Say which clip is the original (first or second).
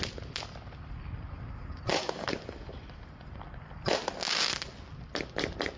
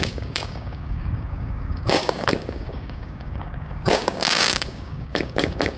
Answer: first